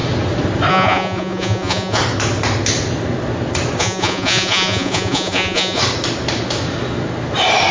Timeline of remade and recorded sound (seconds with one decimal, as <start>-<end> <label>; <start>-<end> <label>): 0.0-0.7 recorded; 0.7-2.0 remade; 2.0-3.8 recorded; 3.8-5.8 remade; 5.8-7.7 recorded

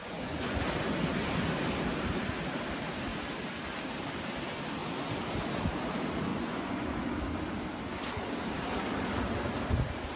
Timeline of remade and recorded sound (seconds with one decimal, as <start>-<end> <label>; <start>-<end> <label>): 0.0-0.6 remade; 0.6-6.3 recorded; 6.3-7.0 remade; 7.0-10.2 recorded

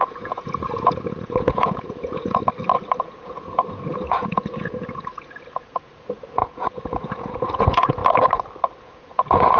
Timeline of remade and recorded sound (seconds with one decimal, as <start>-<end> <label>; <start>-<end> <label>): 0.0-2.4 remade; 2.4-3.0 recorded; 3.0-8.0 remade; 8.0-8.8 recorded; 8.8-9.6 remade